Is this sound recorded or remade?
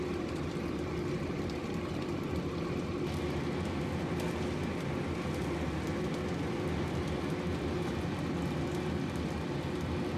recorded